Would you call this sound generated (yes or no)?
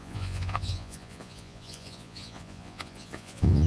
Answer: yes